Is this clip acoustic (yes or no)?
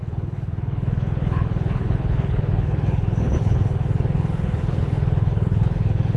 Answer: no